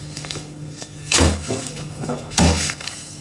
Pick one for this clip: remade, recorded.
remade